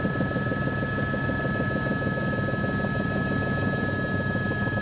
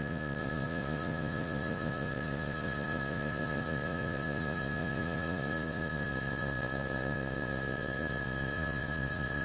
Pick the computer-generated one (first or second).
second